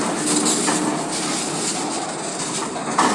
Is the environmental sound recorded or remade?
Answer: recorded